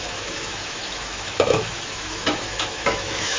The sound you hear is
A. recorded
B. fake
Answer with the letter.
B